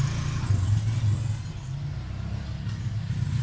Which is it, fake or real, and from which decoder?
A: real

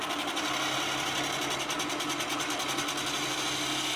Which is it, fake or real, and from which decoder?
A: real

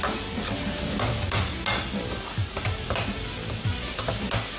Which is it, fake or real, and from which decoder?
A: real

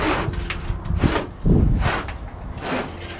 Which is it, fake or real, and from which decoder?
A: real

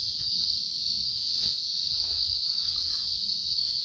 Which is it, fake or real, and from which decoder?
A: fake, codec, SNAC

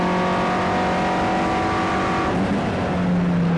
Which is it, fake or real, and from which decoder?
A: real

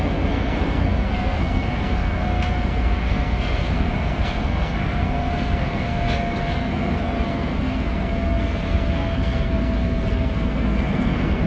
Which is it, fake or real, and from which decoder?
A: fake, codec, SNAC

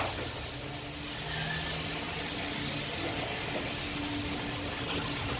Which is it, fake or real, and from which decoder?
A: real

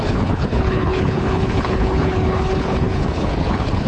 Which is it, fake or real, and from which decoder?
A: fake, codec, HILCodec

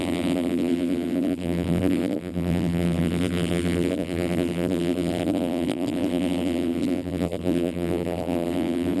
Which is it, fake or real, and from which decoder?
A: fake, vocoder, BigVGAN v2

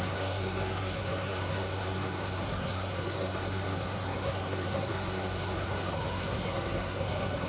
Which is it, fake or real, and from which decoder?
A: fake, codec, SNAC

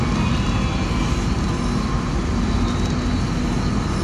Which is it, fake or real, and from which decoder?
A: real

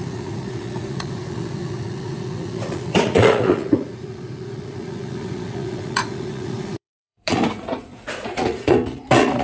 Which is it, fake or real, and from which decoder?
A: fake, vocoder, Vocos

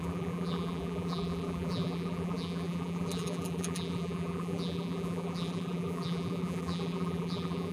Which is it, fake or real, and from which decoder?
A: fake, vocoder, BigVGAN v2